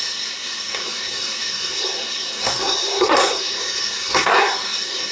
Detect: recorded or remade remade